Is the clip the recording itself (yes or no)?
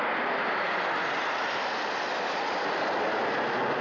yes